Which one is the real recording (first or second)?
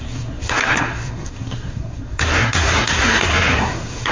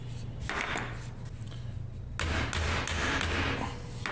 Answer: second